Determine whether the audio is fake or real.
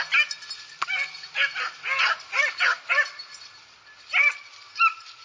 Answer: real